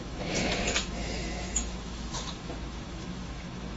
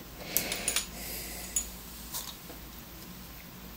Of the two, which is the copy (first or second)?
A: first